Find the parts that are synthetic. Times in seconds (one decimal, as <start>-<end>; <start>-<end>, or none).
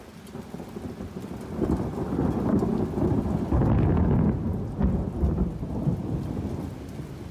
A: none